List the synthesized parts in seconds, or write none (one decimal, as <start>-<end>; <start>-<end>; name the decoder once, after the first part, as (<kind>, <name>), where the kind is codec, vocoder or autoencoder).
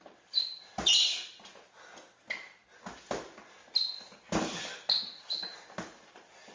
none